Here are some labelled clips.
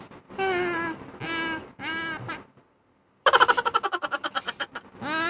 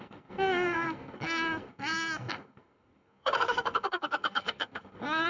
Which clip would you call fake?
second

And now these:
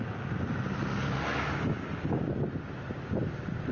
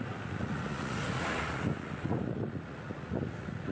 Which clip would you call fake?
second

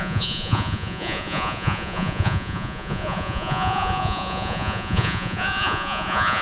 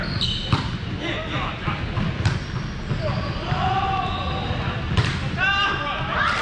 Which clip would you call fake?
first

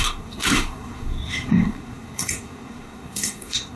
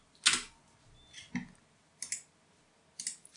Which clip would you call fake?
first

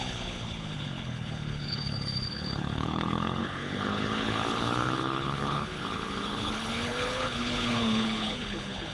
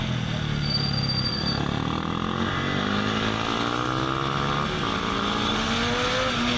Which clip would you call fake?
first